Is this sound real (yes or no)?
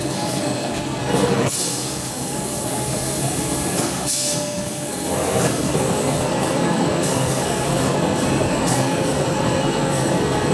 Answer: no